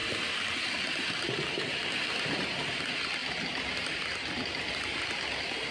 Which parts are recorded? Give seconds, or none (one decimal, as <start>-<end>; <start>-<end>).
2.8-3.2; 4.7-5.7